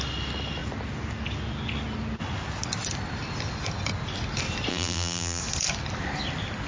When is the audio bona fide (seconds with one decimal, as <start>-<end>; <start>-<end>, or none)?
0.0-4.7; 5.4-6.7